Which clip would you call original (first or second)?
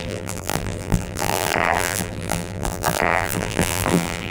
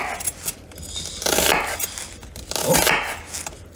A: second